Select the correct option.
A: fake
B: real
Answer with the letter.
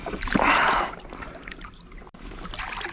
B